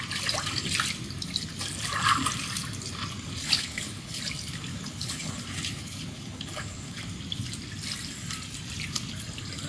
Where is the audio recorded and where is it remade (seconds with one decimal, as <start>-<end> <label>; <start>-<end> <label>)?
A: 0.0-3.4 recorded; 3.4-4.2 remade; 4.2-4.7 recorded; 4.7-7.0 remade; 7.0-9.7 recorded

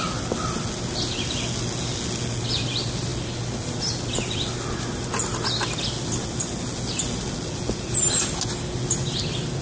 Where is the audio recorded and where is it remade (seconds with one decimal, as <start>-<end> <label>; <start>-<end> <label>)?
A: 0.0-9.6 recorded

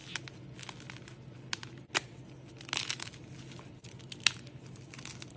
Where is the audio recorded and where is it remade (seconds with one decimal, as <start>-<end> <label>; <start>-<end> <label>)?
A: 0.0-5.4 recorded

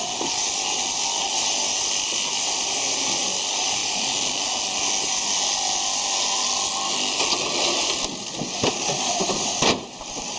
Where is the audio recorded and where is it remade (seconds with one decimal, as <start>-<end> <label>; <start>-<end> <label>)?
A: 0.0-3.8 remade; 3.8-8.7 recorded; 8.7-10.4 remade